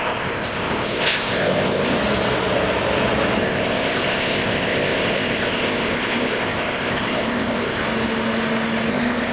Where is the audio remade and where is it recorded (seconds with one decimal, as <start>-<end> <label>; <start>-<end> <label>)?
0.0-2.0 remade; 2.0-3.4 recorded; 3.4-7.8 remade; 7.8-8.9 recorded; 8.9-9.3 remade